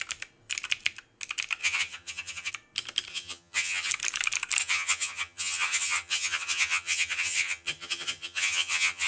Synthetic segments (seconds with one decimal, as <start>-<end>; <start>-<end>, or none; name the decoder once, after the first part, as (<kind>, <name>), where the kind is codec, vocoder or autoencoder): 1.6-2.5 (vocoder, HiFi-GAN); 3.1-3.9; 4.6-9.1

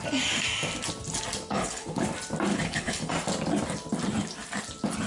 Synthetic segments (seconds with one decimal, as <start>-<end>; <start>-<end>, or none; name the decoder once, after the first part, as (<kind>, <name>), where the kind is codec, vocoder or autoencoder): 1.5-2.0 (codec, HILCodec); 2.5-3.1

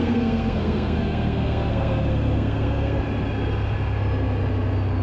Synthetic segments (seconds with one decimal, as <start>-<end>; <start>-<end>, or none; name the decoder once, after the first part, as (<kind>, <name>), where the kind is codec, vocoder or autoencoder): 0.0-3.0 (codec, SNAC)

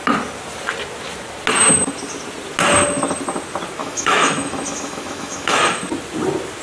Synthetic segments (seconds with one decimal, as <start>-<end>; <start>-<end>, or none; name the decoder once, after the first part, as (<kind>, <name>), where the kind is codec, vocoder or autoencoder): 3.8-5.8 (autoencoder, DAC-VAE)

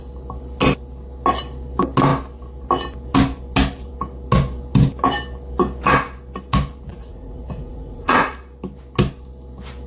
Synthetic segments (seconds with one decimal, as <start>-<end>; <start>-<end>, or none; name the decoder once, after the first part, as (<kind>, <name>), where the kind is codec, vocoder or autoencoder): 6.9-8.3 (vocoder, Vocos)

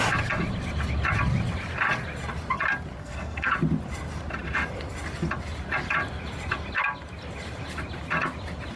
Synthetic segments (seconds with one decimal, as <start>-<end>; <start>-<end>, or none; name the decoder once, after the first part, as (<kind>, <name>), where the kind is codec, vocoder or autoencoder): 3.0-3.5 (codec, SNAC)